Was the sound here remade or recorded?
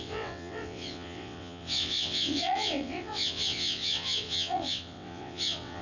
remade